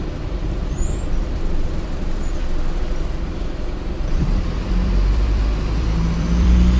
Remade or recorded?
remade